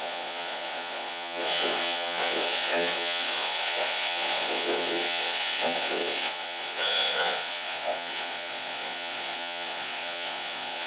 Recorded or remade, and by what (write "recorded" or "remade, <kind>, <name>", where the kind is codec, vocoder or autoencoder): remade, vocoder, Vocos